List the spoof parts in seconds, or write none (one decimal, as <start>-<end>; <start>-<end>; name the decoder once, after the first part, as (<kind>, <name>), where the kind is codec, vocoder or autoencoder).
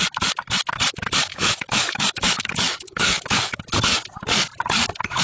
1.3-3.6 (autoencoder, DAC-VAE)